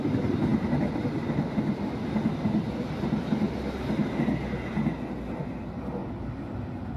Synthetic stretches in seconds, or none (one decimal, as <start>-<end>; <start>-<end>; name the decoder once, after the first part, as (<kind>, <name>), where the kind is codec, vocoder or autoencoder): none